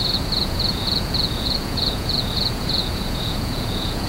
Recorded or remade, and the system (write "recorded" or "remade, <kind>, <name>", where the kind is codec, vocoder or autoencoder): remade, vocoder, Vocos